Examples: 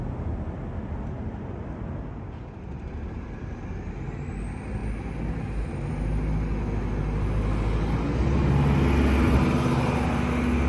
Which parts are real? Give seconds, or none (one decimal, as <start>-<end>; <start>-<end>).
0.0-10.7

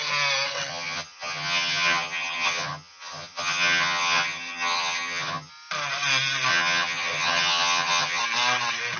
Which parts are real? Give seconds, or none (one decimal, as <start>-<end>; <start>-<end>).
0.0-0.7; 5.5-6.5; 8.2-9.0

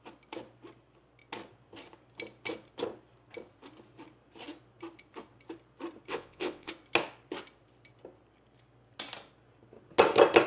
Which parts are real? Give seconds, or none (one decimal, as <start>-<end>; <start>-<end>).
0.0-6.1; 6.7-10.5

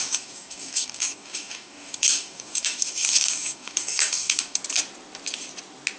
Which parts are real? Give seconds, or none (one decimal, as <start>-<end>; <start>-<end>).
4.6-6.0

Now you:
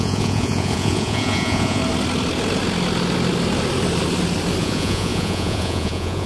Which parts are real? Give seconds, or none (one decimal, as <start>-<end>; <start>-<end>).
1.8-4.6

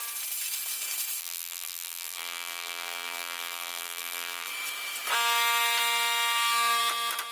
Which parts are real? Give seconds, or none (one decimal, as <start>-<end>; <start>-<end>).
0.0-1.2; 4.5-7.3

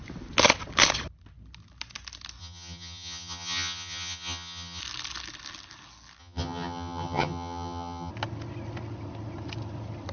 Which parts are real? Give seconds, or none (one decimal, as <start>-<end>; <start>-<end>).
0.0-2.4; 4.8-6.2; 8.1-10.1

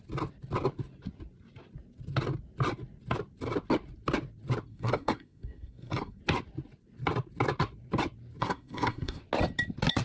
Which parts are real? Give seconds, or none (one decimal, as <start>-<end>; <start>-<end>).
0.0-4.7; 6.2-8.4; 9.2-10.0